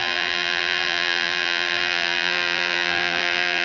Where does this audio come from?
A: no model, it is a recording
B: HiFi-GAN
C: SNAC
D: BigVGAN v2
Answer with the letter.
D